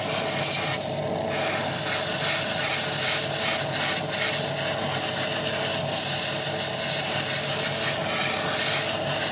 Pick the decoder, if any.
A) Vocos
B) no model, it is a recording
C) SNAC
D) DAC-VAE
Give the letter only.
B